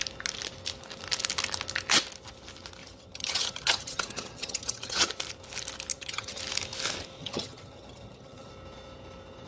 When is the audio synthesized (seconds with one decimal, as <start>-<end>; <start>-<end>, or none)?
2.8-5.1; 5.9-6.4; 7.2-8.5